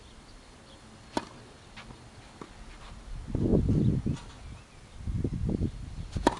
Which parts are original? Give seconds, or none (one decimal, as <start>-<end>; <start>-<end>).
0.0-6.4